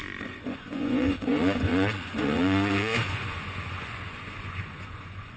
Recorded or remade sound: remade